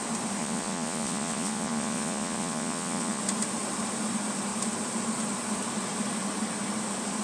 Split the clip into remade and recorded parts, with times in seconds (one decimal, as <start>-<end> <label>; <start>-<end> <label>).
0.0-0.4 recorded; 0.4-3.2 remade; 3.2-7.2 recorded